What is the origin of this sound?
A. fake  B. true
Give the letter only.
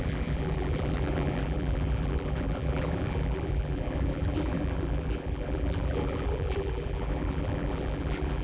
A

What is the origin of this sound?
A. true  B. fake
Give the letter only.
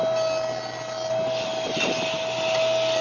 A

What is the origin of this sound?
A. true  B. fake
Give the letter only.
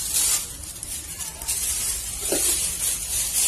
A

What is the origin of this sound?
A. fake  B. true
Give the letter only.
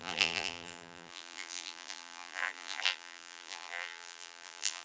A